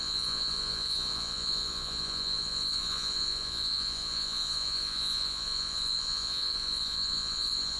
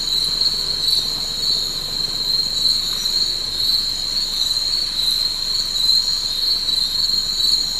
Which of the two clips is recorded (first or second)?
second